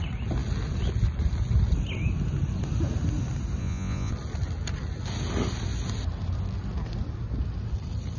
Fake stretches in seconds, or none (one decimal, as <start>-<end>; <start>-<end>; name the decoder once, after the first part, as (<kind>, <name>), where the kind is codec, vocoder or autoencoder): 3.6-4.1 (vocoder, Vocos)